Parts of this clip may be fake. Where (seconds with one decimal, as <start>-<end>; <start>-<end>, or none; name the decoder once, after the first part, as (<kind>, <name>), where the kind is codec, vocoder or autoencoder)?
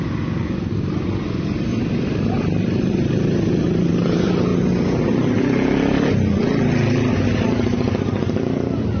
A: 0.0-4.5 (vocoder, BigVGAN v2); 7.1-9.0